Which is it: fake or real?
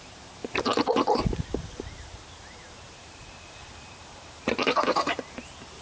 fake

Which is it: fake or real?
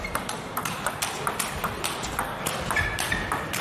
fake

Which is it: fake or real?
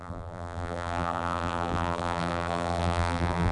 fake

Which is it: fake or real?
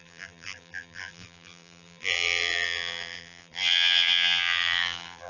fake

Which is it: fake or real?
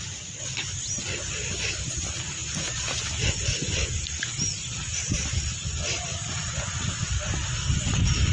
fake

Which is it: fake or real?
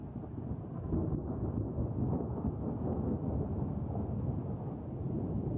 real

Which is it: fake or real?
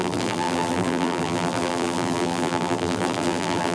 fake